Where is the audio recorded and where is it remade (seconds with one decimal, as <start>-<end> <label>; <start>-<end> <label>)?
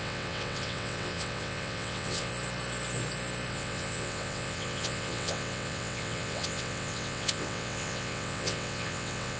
0.0-2.3 remade; 2.3-3.5 recorded; 3.5-9.4 remade